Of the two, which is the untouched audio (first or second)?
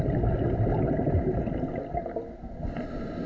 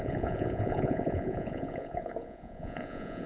first